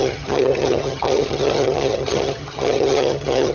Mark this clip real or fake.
fake